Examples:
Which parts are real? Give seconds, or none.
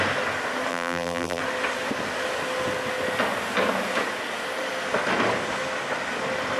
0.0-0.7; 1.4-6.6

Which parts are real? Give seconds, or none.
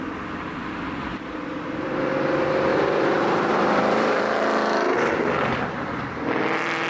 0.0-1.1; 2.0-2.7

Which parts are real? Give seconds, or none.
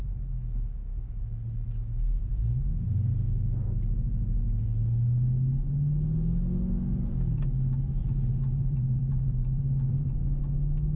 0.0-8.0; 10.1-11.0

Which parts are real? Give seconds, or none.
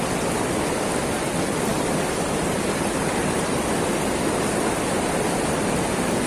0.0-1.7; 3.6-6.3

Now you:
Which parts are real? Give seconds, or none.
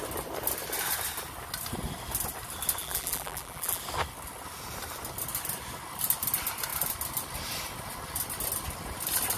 0.0-2.8; 3.8-9.4